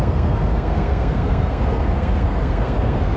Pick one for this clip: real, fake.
fake